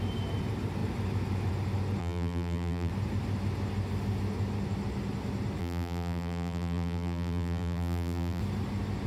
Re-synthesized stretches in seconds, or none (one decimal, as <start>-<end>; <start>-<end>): 2.0-2.9; 5.6-8.4